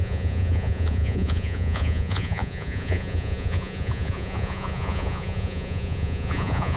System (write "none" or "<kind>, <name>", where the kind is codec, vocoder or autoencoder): vocoder, Vocos